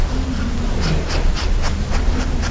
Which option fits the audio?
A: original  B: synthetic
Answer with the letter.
A